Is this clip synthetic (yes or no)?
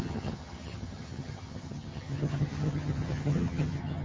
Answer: yes